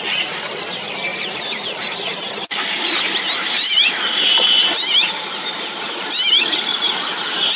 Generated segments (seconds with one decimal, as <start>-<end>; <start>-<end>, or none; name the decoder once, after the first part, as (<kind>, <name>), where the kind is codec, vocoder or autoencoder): 1.1-4.9 (vocoder, BigVGAN v2)